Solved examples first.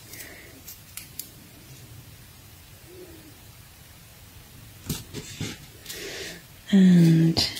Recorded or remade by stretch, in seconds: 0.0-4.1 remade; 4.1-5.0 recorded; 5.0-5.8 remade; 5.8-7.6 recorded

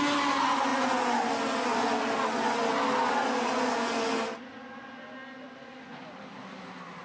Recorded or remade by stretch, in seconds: 0.0-7.0 recorded

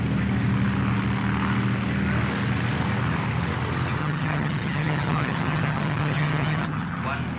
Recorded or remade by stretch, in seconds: 0.0-4.0 recorded; 4.0-7.0 remade; 7.0-7.4 recorded

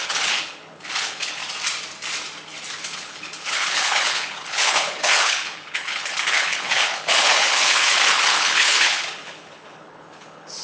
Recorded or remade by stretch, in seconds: 0.0-1.4 remade; 1.4-2.8 recorded; 2.8-10.6 remade

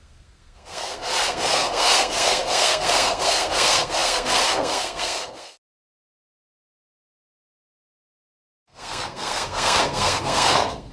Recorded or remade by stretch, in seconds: 0.0-10.9 remade

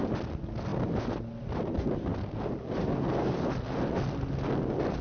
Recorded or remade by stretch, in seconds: 0.0-5.0 recorded

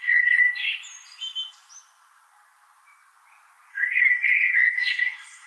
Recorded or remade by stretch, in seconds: 0.0-0.4 remade; 0.4-3.7 recorded; 3.7-5.5 remade

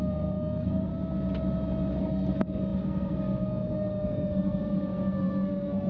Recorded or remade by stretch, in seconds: 0.0-0.9 remade; 0.9-2.0 recorded; 2.0-5.9 remade